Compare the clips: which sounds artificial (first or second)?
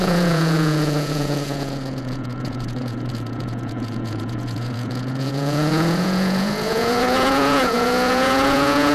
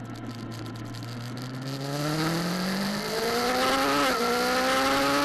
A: first